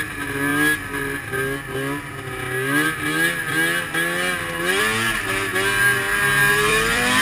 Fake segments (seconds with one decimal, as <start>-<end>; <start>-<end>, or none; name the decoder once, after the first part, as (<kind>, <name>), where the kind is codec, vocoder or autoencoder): 6.4-7.2 (vocoder, BigVGAN v2)